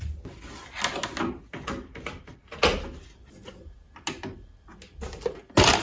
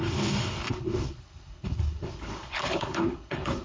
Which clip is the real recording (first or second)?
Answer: first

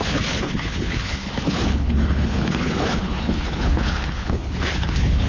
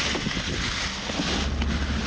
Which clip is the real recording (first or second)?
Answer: second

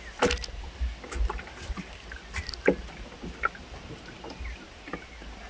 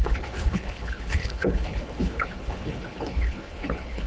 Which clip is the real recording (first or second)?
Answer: first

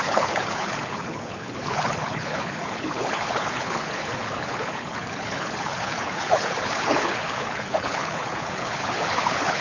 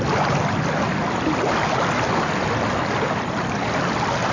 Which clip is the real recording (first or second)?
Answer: second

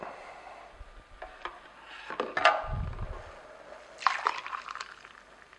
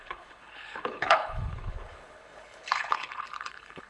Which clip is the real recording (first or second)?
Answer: first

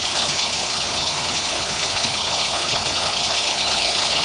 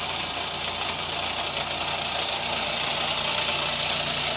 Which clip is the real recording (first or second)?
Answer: second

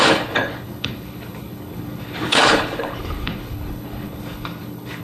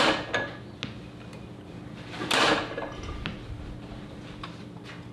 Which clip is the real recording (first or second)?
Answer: second